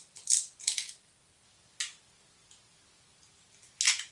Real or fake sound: real